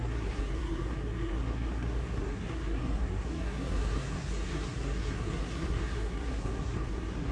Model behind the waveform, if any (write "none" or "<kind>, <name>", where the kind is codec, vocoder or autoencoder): codec, SNAC